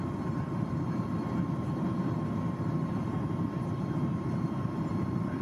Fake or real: fake